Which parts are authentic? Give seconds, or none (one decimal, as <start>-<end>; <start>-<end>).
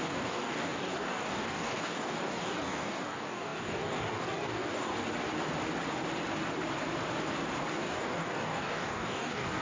4.9-7.7